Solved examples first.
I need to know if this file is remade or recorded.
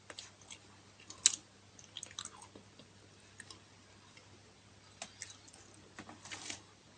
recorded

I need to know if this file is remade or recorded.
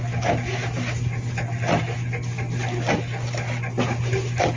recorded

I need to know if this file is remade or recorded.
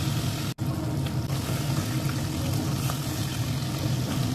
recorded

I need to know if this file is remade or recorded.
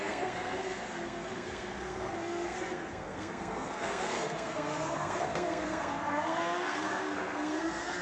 remade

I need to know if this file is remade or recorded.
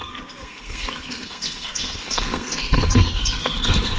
remade